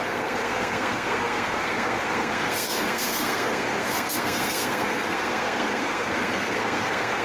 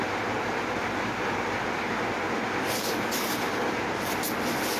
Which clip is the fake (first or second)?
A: first